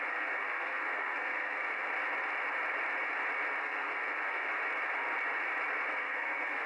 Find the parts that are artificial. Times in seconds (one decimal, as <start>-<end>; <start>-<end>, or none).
0.0-1.9; 3.6-4.5; 6.0-6.7